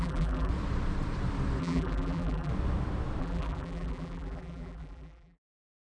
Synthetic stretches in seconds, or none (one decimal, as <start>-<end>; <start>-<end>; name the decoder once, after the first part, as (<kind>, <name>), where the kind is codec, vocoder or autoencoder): 0.0-0.5 (vocoder, BigVGAN v2); 1.6-2.5; 3.2-6.0